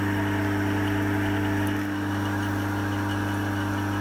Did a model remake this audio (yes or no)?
no